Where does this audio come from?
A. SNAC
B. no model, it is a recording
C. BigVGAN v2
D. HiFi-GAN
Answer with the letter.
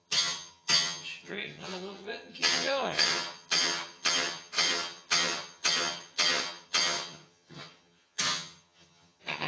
D